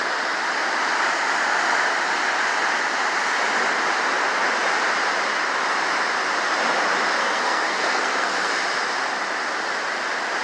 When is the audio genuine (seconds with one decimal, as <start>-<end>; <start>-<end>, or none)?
0.0-7.2; 8.5-10.4